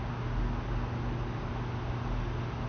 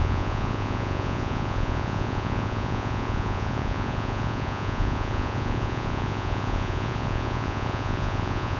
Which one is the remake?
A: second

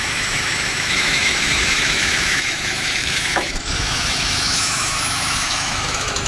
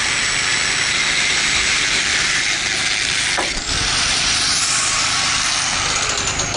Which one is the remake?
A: first